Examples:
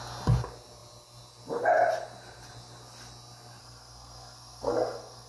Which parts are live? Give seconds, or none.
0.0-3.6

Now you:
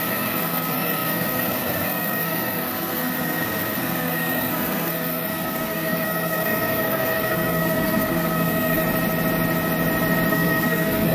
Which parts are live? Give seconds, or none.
8.8-10.3

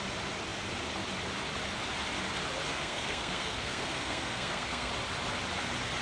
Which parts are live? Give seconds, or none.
0.0-2.7; 4.9-6.0

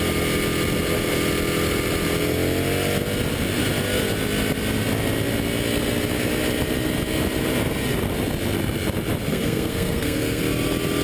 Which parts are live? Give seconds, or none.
0.0-9.3; 10.4-11.0